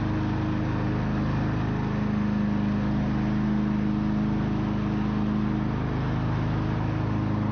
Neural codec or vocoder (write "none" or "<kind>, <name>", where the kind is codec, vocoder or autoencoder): none